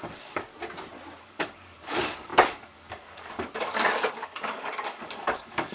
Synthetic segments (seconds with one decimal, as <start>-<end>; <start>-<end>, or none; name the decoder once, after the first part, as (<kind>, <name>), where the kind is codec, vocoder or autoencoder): 0.0-0.5 (codec, DAC); 1.2-5.7